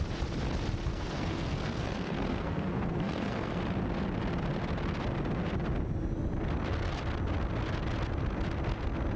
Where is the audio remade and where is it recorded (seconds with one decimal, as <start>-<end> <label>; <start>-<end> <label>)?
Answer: 0.0-0.9 recorded; 0.9-3.6 remade; 3.6-9.2 recorded